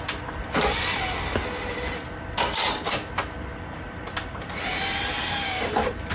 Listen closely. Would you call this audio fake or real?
real